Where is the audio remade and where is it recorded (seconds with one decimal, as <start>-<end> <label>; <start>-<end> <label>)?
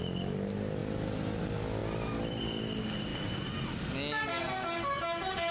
0.0-5.5 recorded